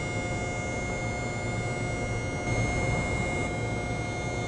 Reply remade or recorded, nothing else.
recorded